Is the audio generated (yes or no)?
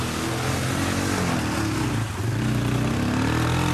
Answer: no